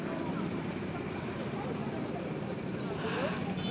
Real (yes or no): yes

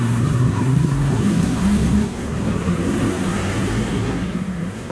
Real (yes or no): no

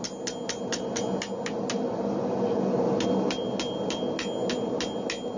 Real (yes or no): yes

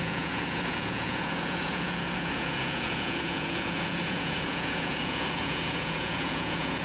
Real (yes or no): no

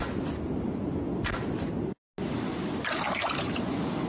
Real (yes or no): yes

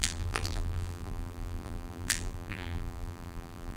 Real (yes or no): no